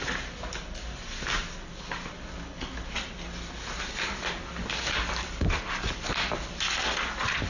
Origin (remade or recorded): recorded